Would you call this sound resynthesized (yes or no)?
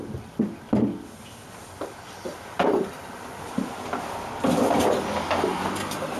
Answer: no